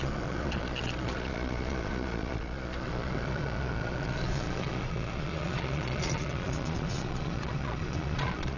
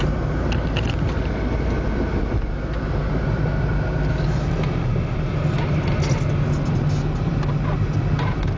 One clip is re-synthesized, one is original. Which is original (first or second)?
second